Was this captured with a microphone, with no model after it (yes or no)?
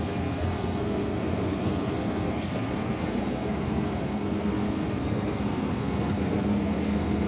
no